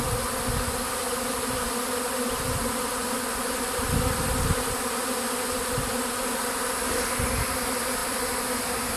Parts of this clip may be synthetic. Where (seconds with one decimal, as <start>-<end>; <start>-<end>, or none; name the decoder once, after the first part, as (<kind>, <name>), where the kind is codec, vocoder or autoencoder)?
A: 8.0-9.0 (vocoder, BigVGAN v2)